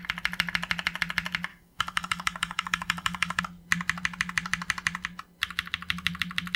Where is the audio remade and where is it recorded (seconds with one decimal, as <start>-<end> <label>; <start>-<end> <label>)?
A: 0.0-1.5 recorded; 1.5-3.4 remade; 3.4-6.6 recorded